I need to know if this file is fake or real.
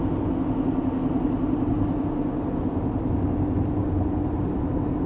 real